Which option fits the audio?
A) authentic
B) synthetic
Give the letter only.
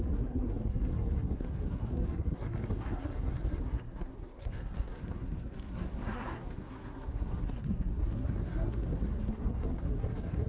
B